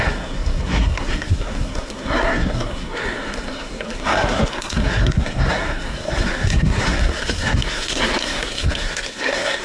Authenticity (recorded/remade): remade